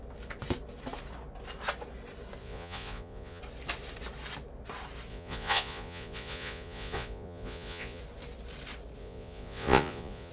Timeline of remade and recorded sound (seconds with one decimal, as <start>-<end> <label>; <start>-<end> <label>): 0.0-2.4 recorded; 2.4-3.4 remade; 3.4-5.1 recorded; 5.1-8.0 remade; 8.0-9.0 recorded; 9.0-10.3 remade